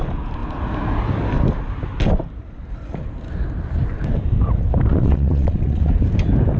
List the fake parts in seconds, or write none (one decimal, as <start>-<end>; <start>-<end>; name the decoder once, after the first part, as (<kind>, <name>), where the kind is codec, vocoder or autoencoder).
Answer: 4.9-5.9 (vocoder, WaveNeXt)